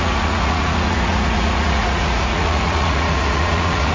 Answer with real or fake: fake